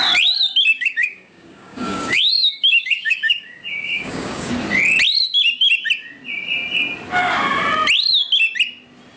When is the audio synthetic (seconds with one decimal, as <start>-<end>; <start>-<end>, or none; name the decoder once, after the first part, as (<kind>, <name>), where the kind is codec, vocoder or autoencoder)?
0.7-4.5 (codec, DAC)